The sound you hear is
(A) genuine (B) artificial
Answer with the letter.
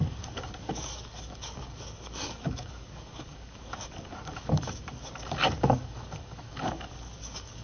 B